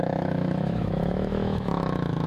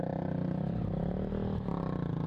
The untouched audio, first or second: second